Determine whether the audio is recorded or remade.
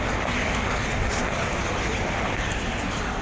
recorded